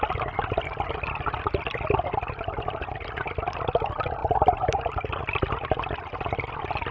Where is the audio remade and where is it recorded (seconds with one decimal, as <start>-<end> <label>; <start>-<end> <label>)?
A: 0.0-6.9 recorded